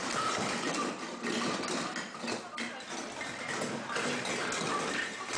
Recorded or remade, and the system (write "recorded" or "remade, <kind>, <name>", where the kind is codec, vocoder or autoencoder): recorded